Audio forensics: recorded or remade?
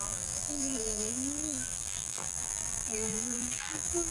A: remade